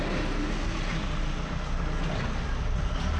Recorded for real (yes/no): yes